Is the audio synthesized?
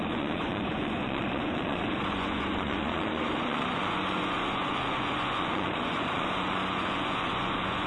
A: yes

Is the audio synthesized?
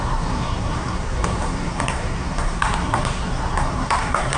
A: yes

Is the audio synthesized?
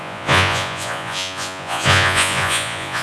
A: yes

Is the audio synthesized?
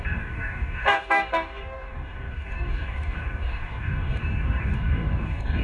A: yes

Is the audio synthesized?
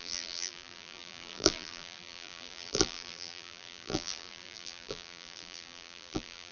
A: yes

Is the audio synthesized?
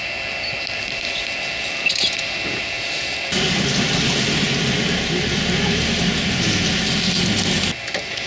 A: no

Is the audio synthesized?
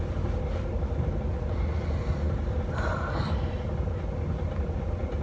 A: no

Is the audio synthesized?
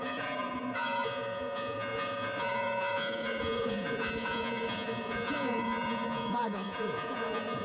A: yes